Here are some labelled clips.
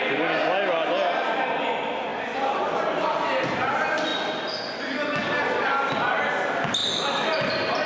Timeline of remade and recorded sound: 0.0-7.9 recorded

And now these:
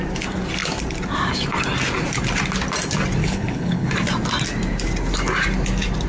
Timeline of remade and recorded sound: 0.0-3.2 recorded; 3.2-3.9 remade; 3.9-6.1 recorded

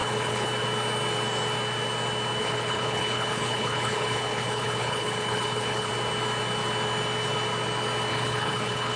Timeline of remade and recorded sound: 0.0-0.5 remade; 0.5-2.4 recorded; 2.4-5.9 remade; 5.9-8.1 recorded; 8.1-9.0 remade

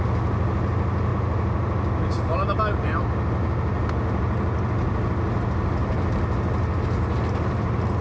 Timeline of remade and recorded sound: 0.0-8.0 recorded

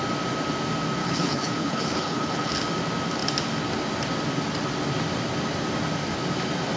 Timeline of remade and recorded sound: 0.0-1.0 recorded; 1.0-2.5 remade; 2.5-6.8 recorded

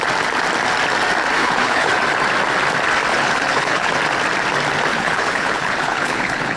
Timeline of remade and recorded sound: 0.0-1.4 recorded; 1.4-1.9 remade; 1.9-3.1 recorded; 3.1-3.9 remade; 3.9-4.9 recorded; 4.9-6.6 remade

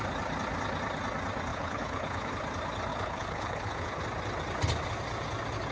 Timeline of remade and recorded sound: 0.0-1.5 recorded; 1.5-2.3 remade; 2.3-2.9 recorded; 2.9-4.0 remade; 4.0-5.7 recorded